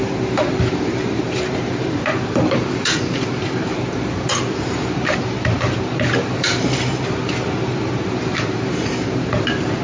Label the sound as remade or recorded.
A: remade